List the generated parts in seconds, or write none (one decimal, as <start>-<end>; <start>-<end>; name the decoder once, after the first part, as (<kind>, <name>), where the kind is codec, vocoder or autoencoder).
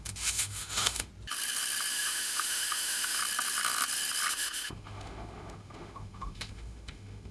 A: 0.0-1.1 (autoencoder, DAC-VAE); 1.9-3.2; 4.3-7.3